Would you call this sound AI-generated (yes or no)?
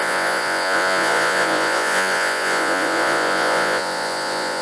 yes